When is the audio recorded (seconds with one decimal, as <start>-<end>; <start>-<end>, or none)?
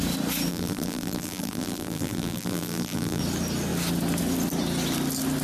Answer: 0.0-0.5; 3.2-5.4